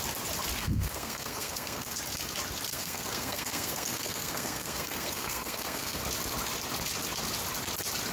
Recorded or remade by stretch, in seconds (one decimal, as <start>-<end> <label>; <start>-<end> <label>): 0.0-0.6 recorded; 0.6-2.0 remade; 2.0-2.7 recorded; 2.7-6.0 remade; 6.0-8.1 recorded